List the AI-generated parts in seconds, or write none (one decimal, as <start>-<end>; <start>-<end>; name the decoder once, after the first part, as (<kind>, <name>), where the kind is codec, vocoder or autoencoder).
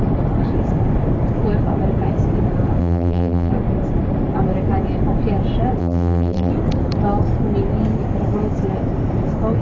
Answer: 2.8-3.5 (vocoder, BigVGAN v2); 5.8-6.5